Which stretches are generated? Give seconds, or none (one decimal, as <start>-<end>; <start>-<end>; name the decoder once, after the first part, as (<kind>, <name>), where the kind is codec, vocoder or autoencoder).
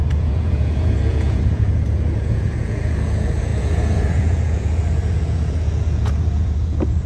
0.0-7.1 (vocoder, Vocos)